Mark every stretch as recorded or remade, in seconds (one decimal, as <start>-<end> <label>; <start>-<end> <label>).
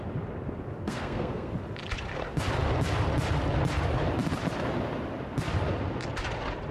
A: 0.0-0.8 recorded; 0.8-1.5 remade; 1.5-6.7 recorded